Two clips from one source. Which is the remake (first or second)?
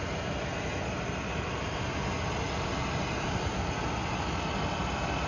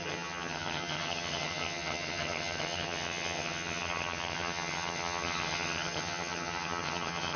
second